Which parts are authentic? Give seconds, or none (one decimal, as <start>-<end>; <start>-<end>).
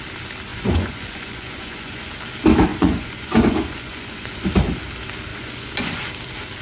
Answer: 0.0-0.5; 2.1-2.7; 4.4-5.3; 6.1-6.6